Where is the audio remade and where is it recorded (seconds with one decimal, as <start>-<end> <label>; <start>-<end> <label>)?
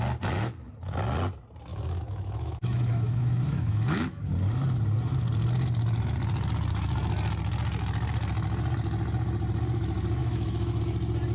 0.0-1.7 recorded; 1.7-4.2 remade; 4.2-10.2 recorded; 10.2-10.8 remade; 10.8-11.3 recorded